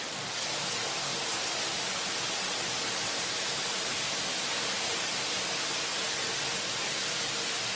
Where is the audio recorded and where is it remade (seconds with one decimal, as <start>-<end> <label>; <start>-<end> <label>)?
0.0-1.1 recorded; 1.1-5.4 remade; 5.4-5.9 recorded; 5.9-6.5 remade; 6.5-7.8 recorded